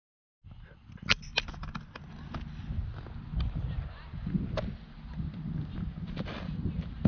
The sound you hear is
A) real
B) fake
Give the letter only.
A